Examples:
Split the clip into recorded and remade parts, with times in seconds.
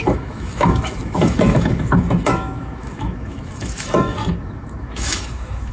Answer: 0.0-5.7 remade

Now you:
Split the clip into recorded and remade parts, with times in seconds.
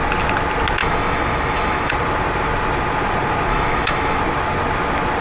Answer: 0.0-0.8 recorded; 0.8-1.9 remade; 1.9-3.5 recorded; 3.5-4.2 remade; 4.2-5.2 recorded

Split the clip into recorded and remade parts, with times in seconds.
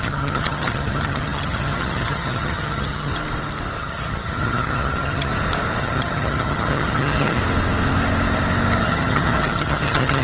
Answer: 0.0-3.1 remade; 3.1-3.8 recorded; 3.8-5.3 remade; 5.3-5.8 recorded; 5.8-7.4 remade; 7.4-8.8 recorded; 8.8-10.2 remade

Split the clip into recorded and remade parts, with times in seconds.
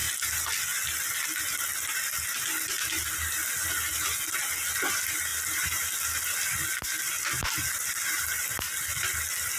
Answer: 0.0-9.6 recorded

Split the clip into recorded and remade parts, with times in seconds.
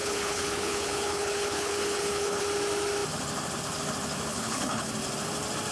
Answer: 0.0-2.4 remade; 2.4-4.3 recorded; 4.3-4.9 remade; 4.9-5.7 recorded